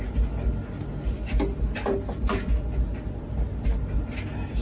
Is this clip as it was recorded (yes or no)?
yes